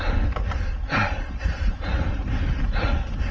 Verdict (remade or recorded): recorded